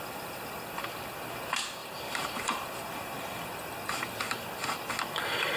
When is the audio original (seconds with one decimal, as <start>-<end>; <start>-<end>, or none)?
0.0-1.8; 4.2-5.6